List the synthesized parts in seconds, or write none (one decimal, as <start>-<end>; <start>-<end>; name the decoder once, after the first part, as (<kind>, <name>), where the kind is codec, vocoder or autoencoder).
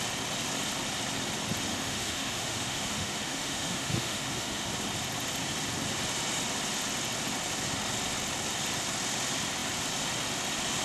1.7-4.7 (autoencoder, DAC-VAE)